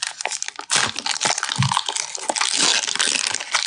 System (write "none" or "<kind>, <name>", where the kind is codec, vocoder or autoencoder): none